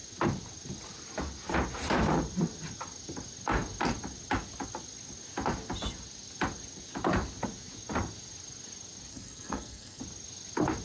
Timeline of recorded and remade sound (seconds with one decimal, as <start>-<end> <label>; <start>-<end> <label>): 0.0-9.1 recorded; 9.1-10.0 remade; 10.0-10.8 recorded